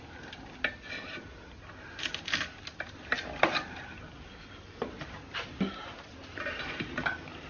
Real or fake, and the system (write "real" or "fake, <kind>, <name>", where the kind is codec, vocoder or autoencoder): real